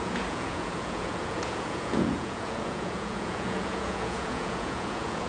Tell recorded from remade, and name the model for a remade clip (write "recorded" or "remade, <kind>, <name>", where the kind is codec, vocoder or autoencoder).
remade, vocoder, Vocos